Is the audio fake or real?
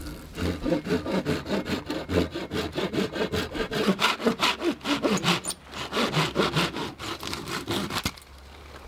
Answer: real